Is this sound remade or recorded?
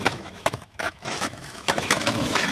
remade